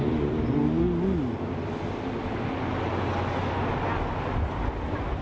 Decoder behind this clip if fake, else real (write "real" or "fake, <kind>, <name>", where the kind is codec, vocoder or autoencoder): real